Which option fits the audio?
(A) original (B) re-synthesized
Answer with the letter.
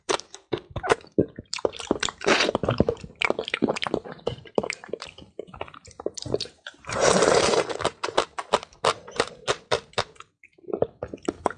B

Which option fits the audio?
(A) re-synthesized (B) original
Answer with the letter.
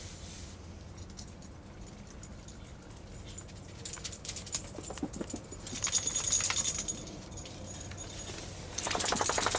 B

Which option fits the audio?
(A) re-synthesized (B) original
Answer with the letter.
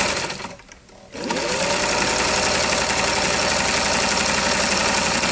B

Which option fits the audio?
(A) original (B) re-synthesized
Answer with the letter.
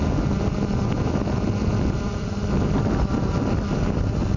A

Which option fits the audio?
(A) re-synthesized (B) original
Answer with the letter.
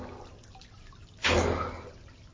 B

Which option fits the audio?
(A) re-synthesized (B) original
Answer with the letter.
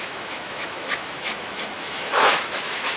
A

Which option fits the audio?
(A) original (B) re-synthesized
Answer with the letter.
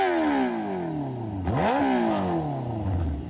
A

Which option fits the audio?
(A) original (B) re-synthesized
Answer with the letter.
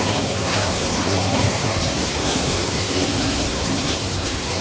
B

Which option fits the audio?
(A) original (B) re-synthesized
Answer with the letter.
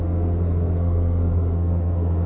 B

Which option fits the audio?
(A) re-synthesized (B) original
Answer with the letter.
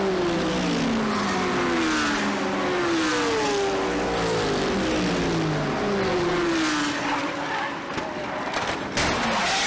B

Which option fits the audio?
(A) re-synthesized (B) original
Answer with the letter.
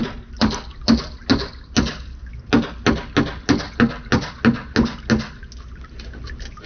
B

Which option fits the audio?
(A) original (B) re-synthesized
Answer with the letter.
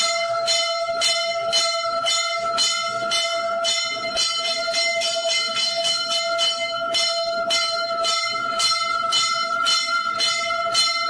A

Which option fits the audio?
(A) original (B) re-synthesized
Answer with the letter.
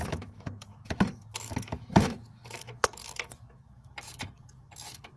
B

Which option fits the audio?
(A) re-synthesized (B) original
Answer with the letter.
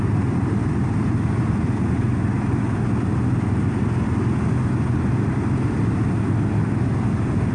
B